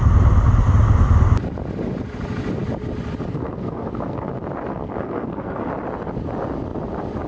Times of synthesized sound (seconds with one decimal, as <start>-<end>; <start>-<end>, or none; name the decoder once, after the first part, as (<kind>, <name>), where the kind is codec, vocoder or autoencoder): 3.3-4.3 (codec, SNAC); 4.7-5.7